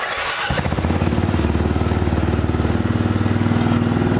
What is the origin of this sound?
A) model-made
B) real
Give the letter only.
B